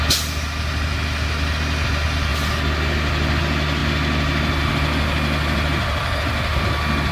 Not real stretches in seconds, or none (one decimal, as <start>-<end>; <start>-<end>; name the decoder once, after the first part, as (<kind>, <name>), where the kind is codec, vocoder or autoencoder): none